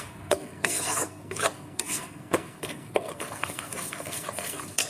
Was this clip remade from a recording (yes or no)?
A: yes